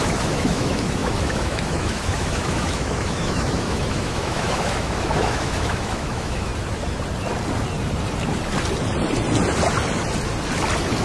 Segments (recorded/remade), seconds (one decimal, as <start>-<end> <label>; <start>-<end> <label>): 0.0-6.5 remade; 6.5-11.0 recorded